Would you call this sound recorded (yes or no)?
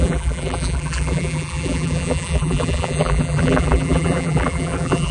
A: no